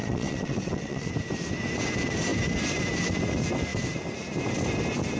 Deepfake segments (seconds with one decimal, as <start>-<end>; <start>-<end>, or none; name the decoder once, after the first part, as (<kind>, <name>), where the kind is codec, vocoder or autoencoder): 0.0-1.1 (vocoder, WaveNeXt)